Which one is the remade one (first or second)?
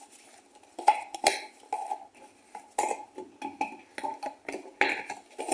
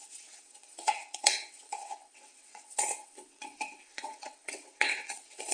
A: second